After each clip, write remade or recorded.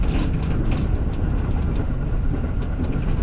recorded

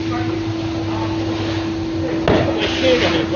recorded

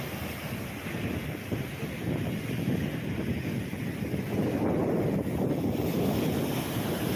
recorded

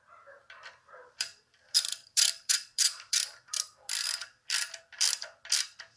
remade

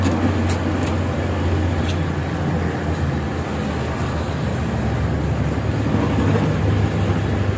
recorded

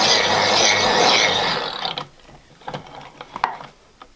recorded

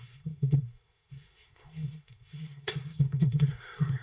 remade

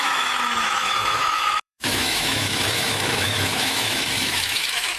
remade